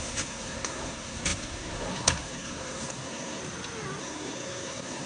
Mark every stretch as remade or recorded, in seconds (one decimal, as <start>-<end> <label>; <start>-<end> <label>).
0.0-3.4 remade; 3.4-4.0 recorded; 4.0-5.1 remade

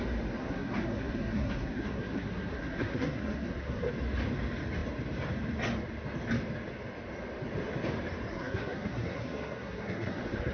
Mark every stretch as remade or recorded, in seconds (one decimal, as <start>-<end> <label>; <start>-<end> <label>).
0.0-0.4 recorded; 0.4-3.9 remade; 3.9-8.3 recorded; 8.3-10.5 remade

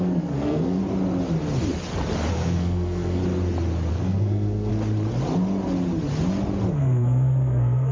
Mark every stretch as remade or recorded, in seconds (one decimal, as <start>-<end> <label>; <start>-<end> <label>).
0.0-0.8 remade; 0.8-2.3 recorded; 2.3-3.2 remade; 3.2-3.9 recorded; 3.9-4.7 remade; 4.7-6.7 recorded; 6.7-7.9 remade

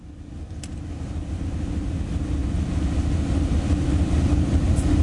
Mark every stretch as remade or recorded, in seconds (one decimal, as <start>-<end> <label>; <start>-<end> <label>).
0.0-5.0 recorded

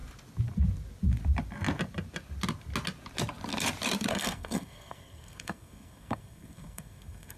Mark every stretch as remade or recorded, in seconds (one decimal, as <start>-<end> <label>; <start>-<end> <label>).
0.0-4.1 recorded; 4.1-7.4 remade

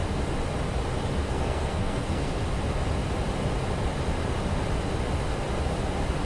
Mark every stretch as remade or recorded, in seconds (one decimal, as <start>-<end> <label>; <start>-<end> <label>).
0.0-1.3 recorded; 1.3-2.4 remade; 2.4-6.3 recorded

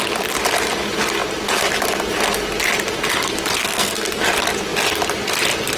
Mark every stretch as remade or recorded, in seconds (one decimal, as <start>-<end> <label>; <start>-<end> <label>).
0.0-3.6 recorded; 3.6-4.2 remade; 4.2-5.8 recorded